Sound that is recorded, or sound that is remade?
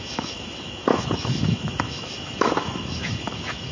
remade